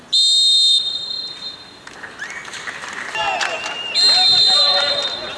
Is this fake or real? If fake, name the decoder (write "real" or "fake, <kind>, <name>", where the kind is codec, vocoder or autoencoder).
real